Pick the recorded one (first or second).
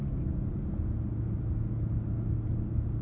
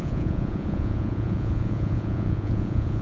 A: first